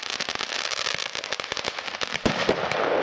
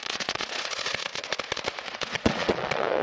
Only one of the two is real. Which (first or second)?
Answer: first